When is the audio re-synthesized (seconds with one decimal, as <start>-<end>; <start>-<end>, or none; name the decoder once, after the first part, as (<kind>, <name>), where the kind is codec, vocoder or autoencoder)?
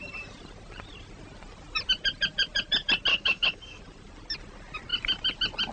3.1-3.8 (codec, DAC)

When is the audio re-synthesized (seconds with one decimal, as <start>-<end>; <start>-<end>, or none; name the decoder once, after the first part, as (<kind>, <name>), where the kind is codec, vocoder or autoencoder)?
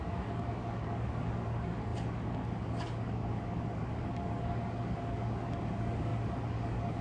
0.0-7.0 (codec, DAC)